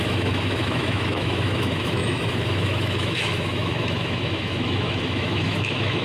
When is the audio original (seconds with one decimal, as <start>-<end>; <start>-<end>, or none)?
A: none